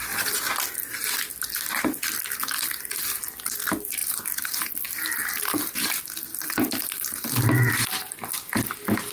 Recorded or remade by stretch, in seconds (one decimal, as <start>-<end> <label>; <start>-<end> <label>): 0.0-9.1 recorded